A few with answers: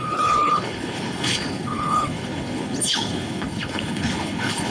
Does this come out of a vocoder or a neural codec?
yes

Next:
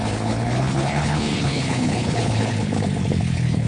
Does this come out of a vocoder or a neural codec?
yes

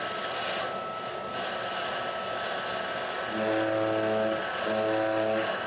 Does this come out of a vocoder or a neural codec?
no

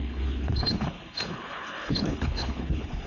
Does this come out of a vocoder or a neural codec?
yes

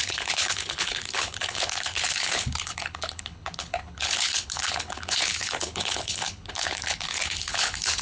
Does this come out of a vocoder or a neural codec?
yes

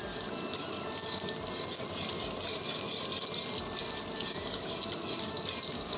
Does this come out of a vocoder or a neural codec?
no